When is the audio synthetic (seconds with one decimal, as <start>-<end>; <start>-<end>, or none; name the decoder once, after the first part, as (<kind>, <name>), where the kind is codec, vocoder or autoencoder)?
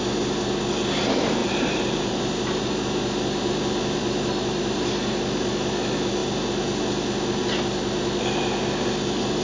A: 1.4-2.2 (vocoder, BigVGAN v2)